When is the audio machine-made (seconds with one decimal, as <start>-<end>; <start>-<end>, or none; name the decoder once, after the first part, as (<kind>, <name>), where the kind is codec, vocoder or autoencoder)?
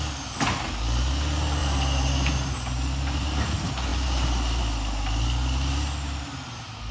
1.6-3.4 (vocoder, BigVGAN v2); 3.9-4.6